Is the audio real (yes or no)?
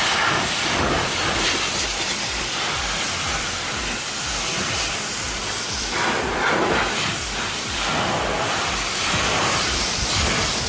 no